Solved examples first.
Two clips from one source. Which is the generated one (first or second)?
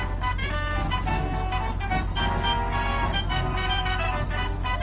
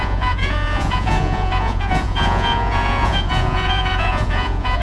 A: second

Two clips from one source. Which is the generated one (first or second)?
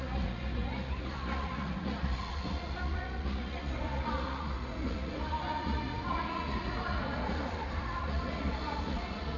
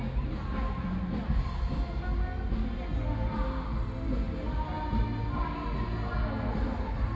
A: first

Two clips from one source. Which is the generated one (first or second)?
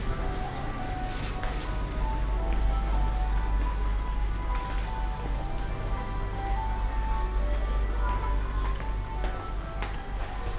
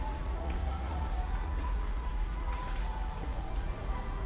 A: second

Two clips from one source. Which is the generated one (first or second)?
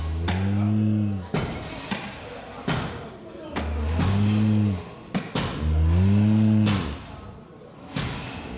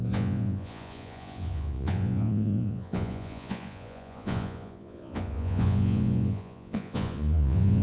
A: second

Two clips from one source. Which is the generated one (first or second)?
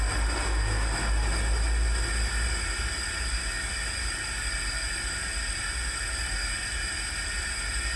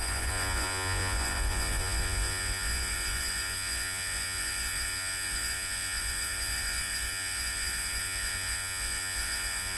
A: second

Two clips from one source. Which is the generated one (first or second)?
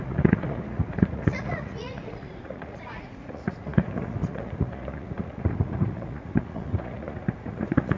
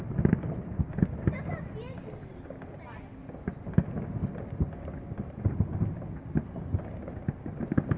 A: first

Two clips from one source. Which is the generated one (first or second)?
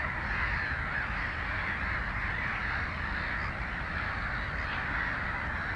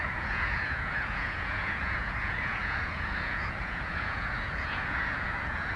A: second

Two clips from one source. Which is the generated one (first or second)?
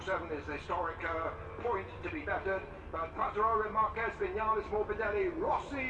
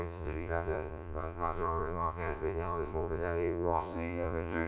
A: second